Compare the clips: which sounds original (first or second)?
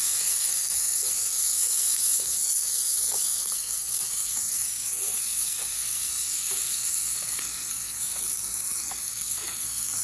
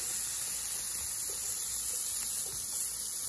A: second